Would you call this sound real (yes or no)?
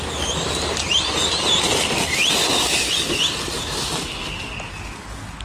yes